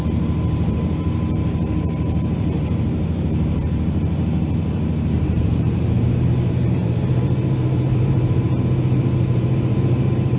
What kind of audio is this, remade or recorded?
remade